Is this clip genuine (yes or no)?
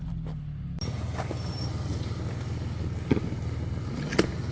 yes